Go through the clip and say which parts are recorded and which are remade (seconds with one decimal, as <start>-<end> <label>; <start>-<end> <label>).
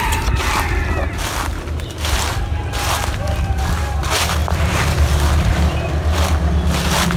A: 0.0-7.2 recorded